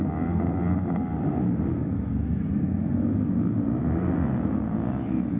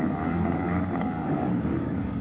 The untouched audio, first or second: first